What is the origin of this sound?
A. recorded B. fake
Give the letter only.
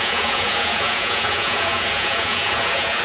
B